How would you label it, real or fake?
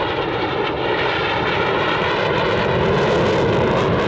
real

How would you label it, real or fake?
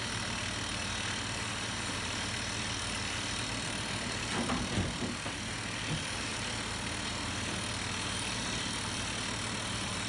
real